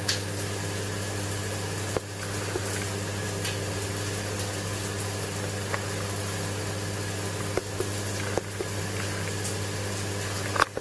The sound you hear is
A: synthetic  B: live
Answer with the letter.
B